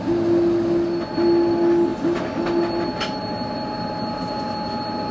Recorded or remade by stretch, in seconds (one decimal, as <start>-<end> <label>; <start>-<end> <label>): 0.0-5.1 recorded